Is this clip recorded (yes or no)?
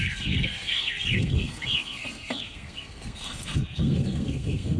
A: no